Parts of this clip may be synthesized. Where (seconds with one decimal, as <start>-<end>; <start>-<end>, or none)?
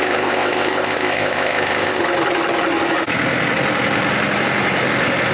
0.0-2.0